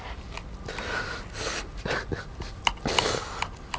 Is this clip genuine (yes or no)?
yes